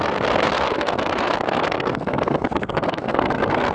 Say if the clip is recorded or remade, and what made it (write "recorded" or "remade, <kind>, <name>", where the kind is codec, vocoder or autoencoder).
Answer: remade, codec, SNAC